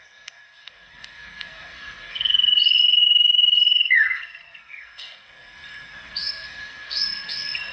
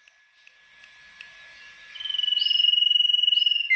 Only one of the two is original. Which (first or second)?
second